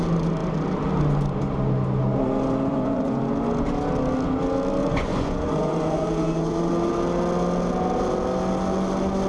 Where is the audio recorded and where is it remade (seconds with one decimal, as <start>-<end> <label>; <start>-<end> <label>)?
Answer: 0.0-2.7 recorded; 2.7-3.2 remade; 3.2-4.8 recorded; 4.8-6.7 remade; 6.7-9.3 recorded